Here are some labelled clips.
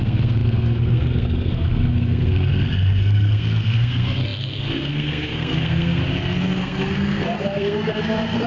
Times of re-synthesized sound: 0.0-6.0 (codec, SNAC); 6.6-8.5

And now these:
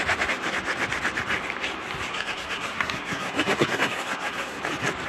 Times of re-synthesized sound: 2.1-4.6 (codec, SNAC)